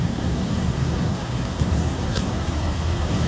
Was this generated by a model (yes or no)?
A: yes